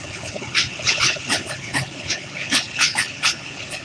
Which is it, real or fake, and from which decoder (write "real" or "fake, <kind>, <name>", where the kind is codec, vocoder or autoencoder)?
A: fake, codec, HILCodec